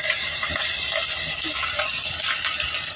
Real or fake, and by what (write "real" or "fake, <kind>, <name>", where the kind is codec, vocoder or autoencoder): real